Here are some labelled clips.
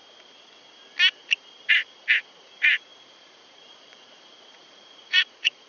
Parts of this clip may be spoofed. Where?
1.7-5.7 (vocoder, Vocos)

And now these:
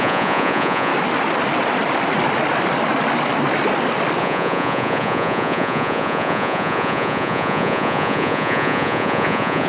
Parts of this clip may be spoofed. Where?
0.0-0.9 (vocoder, Vocos); 4.2-9.7

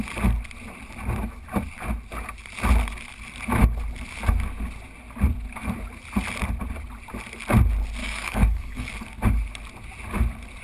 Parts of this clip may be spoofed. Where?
8.0-8.9 (codec, DAC)

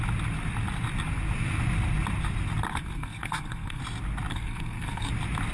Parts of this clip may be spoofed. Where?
2.7-3.8 (codec, SNAC); 4.3-5.1